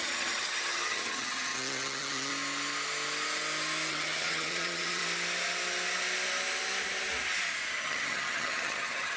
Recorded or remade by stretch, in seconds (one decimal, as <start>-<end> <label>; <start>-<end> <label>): 0.0-2.3 remade; 2.3-3.9 recorded; 3.9-5.0 remade; 5.0-7.8 recorded; 7.8-9.2 remade